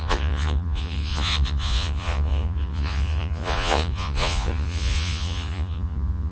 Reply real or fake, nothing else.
fake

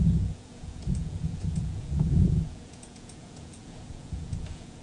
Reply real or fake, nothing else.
fake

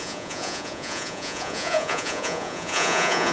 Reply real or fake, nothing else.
fake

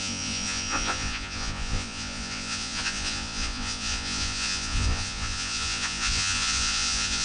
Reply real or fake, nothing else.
fake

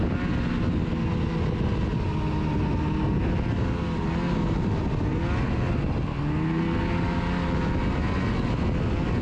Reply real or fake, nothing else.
real